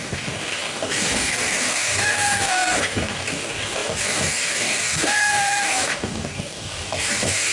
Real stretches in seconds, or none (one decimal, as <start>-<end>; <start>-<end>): none